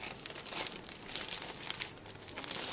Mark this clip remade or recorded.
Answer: recorded